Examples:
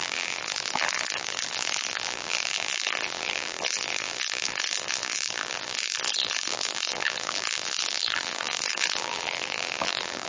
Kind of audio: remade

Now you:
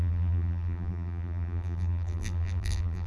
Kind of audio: remade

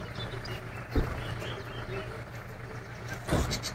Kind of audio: recorded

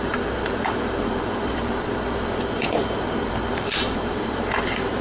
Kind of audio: remade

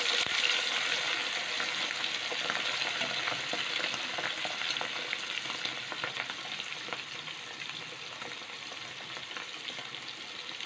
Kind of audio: recorded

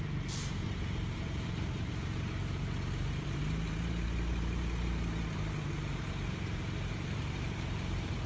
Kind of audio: remade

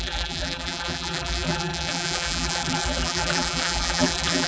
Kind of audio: remade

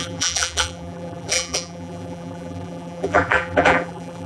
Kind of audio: remade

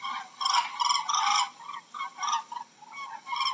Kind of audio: recorded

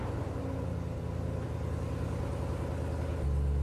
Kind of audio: recorded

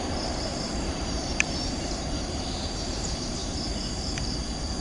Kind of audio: remade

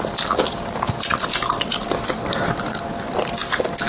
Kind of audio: recorded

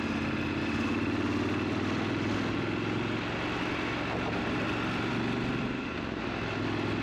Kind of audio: recorded